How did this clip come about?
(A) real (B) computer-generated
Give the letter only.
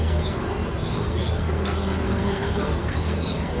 B